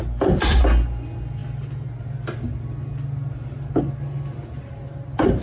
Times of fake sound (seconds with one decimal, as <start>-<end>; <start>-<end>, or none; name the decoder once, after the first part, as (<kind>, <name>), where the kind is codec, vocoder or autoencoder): none